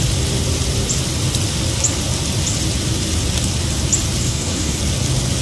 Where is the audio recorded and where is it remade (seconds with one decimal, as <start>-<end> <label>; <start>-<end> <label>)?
0.0-4.2 recorded; 4.2-4.8 remade; 4.8-5.4 recorded